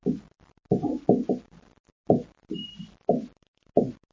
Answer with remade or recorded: recorded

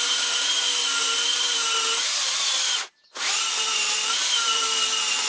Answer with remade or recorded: remade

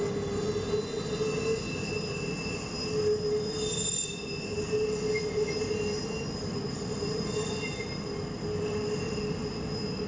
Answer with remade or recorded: recorded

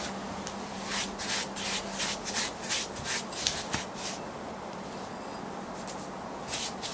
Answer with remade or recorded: recorded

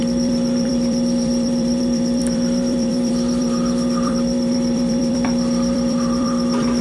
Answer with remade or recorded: remade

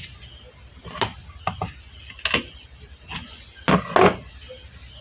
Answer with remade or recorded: recorded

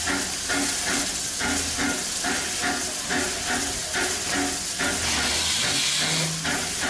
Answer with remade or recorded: recorded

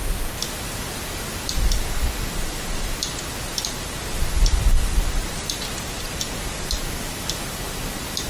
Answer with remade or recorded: recorded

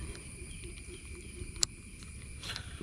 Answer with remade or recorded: remade